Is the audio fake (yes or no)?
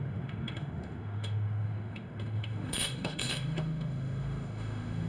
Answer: yes